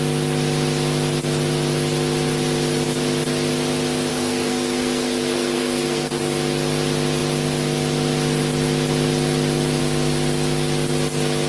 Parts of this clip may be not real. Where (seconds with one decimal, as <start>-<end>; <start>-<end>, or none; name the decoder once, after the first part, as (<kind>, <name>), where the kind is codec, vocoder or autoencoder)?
4.1-6.2 (codec, SNAC)